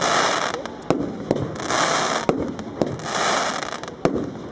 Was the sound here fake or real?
real